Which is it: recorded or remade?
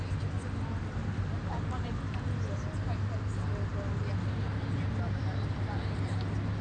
recorded